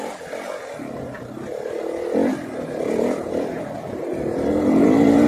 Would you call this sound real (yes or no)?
yes